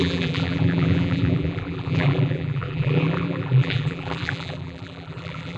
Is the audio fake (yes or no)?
yes